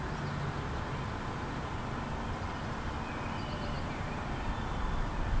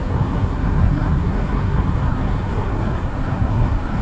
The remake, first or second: second